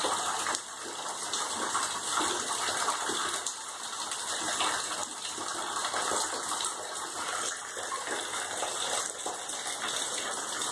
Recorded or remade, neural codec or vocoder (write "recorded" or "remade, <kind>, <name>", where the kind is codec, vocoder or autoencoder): recorded